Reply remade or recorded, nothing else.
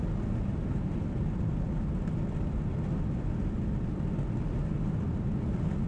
recorded